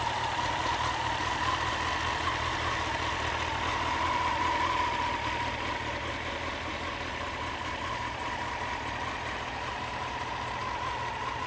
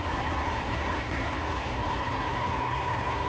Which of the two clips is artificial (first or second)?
second